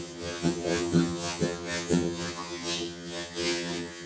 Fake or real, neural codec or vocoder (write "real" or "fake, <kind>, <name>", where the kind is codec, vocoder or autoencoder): fake, vocoder, HiFi-GAN